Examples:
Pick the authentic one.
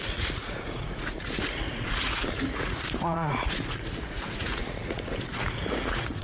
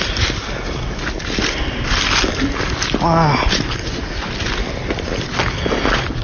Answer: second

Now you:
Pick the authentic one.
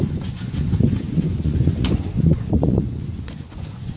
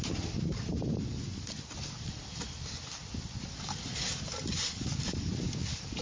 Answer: second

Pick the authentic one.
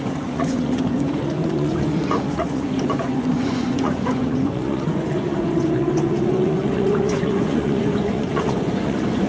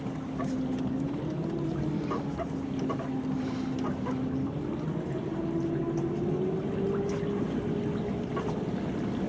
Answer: second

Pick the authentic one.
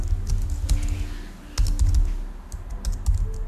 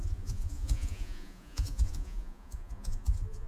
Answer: first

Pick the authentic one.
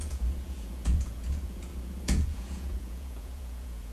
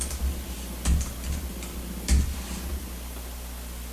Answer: second